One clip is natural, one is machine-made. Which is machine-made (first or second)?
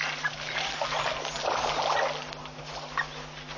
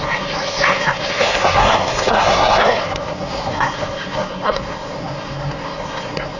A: second